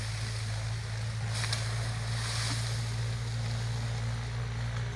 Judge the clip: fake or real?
real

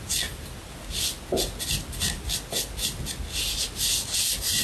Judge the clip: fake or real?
real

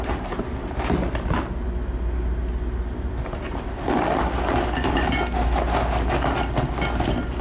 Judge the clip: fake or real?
real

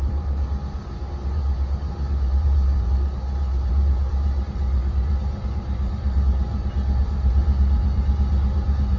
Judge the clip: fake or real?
fake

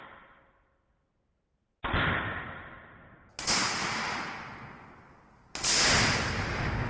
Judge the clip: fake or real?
real